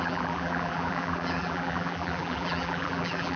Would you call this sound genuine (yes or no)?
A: no